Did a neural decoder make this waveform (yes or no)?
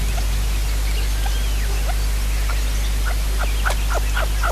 no